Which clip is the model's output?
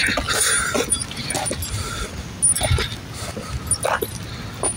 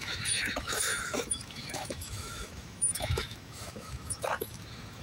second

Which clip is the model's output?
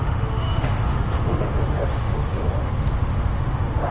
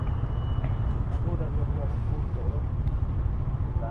first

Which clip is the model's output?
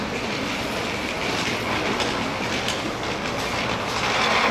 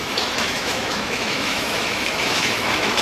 second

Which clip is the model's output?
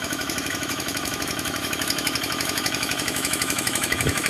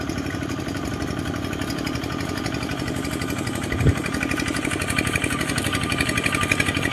first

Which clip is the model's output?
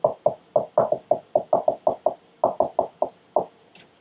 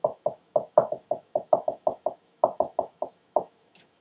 second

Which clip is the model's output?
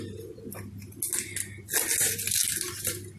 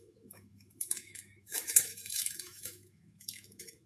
second